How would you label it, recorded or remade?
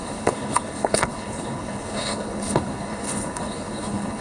remade